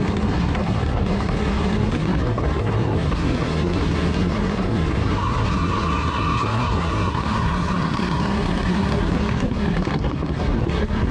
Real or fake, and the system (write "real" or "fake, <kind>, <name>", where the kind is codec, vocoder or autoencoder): fake, codec, SNAC